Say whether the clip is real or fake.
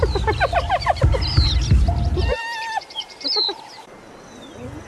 real